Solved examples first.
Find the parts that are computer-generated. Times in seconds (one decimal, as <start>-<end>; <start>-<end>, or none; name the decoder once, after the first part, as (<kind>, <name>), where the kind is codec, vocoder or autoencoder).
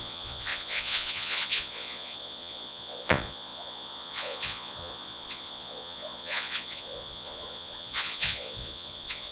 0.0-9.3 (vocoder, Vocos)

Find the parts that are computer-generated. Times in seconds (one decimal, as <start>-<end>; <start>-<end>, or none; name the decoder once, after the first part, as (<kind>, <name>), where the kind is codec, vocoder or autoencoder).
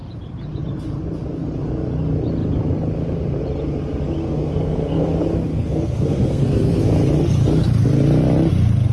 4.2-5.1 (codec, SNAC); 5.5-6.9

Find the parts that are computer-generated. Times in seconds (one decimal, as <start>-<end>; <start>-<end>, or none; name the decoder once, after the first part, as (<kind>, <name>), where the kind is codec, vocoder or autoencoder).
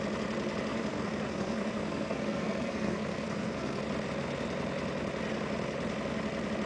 0.7-3.8 (codec, SNAC)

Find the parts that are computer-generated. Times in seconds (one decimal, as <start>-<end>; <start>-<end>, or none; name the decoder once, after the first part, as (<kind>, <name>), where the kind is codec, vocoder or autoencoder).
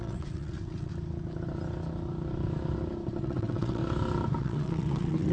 0.0-0.9 (vocoder, WaveNeXt); 3.2-3.8; 4.4-5.3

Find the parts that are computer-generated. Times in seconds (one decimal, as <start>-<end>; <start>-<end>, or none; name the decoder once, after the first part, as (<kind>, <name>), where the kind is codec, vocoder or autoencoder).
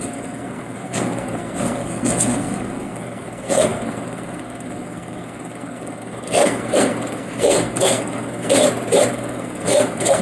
0.0-8.5 (codec, SNAC); 9.1-10.2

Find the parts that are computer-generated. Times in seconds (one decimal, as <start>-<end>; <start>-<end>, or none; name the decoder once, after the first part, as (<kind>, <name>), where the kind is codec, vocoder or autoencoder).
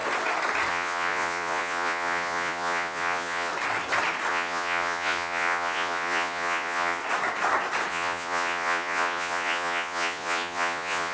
0.7-3.5 (vocoder, Vocos); 4.3-7.0; 7.9-11.1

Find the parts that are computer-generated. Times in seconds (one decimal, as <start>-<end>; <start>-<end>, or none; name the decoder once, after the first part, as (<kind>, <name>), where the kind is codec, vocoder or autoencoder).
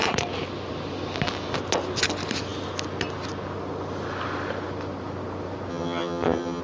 5.7-6.6 (vocoder, HiFi-GAN)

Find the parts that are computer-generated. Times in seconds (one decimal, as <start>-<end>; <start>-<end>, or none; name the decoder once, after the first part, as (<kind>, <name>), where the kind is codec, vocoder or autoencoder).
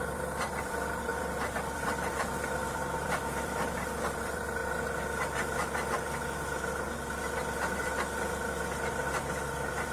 0.0-4.6 (vocoder, BigVGAN v2); 8.9-9.9